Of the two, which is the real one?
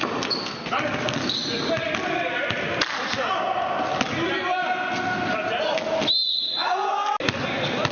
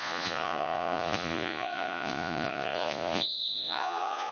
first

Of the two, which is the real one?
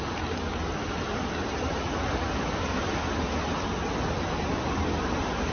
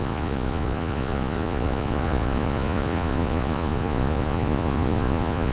first